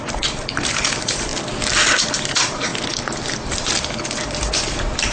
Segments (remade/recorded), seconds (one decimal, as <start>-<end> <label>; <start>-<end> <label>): 0.0-1.3 remade; 1.3-2.0 recorded; 2.0-5.1 remade